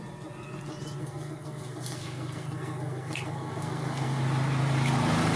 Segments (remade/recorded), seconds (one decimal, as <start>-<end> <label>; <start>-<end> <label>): 0.0-1.0 recorded; 1.0-4.2 remade; 4.2-5.4 recorded